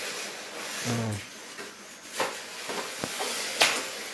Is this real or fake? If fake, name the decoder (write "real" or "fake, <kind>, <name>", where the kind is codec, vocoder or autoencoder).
fake, vocoder, Vocos